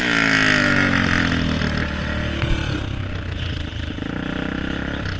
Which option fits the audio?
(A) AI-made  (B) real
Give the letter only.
B